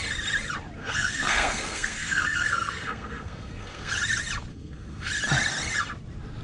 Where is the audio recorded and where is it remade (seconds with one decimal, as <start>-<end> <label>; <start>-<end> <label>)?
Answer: 0.0-0.8 recorded; 0.8-3.9 remade; 3.9-4.5 recorded; 4.5-5.1 remade; 5.1-6.4 recorded